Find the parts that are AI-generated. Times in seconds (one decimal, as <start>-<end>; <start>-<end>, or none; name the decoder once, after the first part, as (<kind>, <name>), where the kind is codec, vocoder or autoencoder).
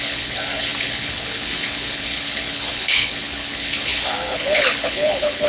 0.0-5.5 (codec, HILCodec)